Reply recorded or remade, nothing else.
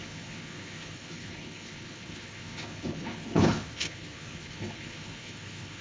remade